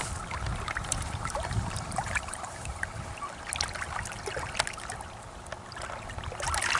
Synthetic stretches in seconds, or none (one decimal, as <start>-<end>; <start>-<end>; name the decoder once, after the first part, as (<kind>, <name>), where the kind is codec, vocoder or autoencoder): 0.8-3.1 (vocoder, BigVGAN v2)